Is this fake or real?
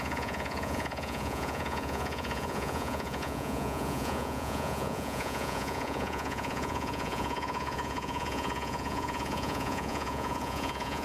fake